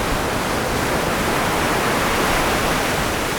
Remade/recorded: recorded